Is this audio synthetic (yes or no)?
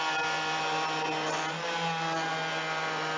no